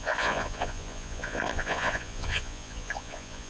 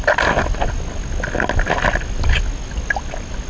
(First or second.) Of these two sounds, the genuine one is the second